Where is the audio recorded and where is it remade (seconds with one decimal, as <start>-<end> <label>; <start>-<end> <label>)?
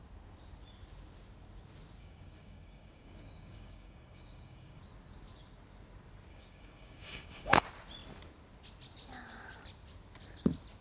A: 0.0-2.0 recorded; 2.0-4.8 remade; 4.8-6.3 recorded; 6.3-7.6 remade; 7.6-10.8 recorded